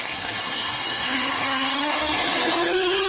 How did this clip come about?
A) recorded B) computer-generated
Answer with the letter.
B